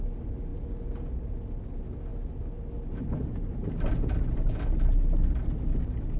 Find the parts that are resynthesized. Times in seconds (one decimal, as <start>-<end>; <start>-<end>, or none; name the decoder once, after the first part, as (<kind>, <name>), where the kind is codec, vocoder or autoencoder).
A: none